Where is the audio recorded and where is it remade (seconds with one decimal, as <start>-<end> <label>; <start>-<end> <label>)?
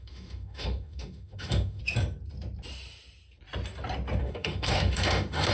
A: 0.0-1.8 remade; 1.8-4.2 recorded; 4.2-5.5 remade